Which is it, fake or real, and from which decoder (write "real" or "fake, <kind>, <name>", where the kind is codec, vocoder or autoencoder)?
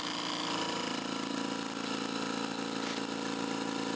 real